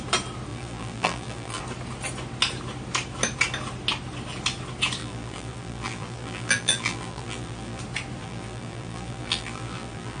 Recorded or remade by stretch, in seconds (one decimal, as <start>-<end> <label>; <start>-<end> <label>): 0.0-0.5 recorded; 0.5-1.6 remade; 1.6-5.0 recorded; 5.0-7.8 remade; 7.8-8.2 recorded; 8.2-10.2 remade